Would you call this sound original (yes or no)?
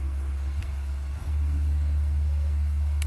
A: no